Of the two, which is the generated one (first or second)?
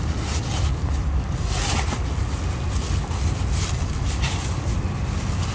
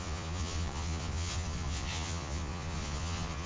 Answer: second